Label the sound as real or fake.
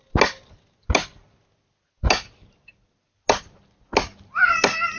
real